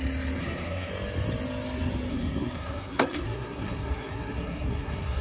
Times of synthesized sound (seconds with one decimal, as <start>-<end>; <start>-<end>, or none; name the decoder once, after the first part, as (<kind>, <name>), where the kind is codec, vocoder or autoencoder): 0.4-0.9 (codec, SNAC); 2.1-5.2